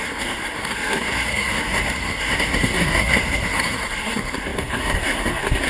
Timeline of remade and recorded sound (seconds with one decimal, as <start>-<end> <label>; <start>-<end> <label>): 0.0-5.7 remade